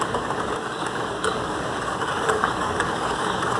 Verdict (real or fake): fake